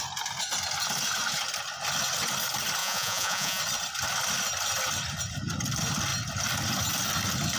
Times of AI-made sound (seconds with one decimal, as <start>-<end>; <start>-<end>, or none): 2.8-3.6